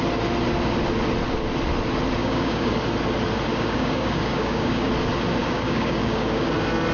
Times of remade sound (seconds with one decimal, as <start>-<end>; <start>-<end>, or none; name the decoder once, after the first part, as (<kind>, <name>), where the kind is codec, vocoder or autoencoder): 2.2-2.7 (codec, DAC); 3.5-4.9; 5.4-6.5

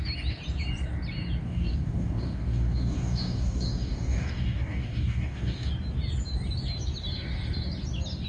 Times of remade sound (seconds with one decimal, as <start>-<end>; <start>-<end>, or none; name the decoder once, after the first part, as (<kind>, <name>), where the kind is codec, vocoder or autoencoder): 1.4-5.7 (codec, DAC)

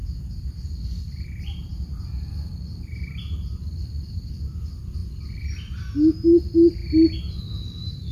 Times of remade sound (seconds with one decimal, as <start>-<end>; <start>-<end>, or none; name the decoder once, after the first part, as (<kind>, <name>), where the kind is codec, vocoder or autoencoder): none

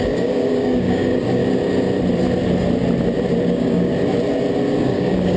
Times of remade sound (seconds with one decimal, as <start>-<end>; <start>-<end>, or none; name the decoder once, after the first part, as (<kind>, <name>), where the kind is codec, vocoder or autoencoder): 0.0-1.4 (codec, DAC); 3.4-3.9; 4.8-5.4

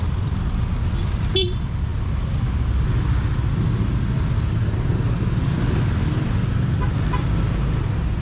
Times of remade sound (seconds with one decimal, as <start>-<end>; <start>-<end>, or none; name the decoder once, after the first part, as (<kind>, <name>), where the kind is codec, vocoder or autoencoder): none